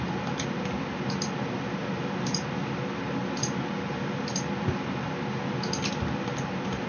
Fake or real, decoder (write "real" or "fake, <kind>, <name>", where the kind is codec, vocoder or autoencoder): real